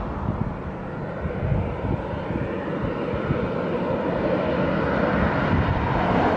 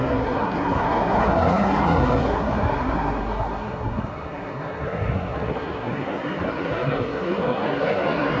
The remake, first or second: second